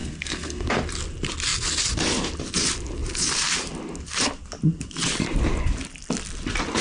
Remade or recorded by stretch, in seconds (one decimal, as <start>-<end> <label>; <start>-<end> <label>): 0.0-0.7 remade; 0.7-6.8 recorded